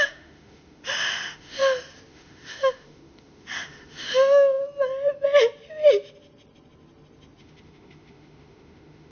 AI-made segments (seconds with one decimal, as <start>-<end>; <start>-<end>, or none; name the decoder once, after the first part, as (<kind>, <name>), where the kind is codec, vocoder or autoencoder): 0.0-1.6 (autoencoder, DAC-VAE); 2.1-4.6; 7.4-9.1